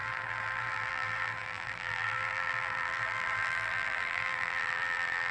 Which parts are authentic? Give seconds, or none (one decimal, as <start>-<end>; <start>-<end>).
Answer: none